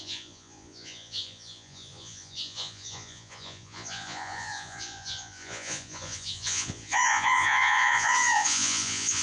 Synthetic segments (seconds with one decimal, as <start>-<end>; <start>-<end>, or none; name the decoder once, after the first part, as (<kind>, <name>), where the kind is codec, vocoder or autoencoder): 0.0-9.2 (vocoder, Vocos)